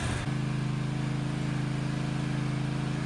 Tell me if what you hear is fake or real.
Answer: real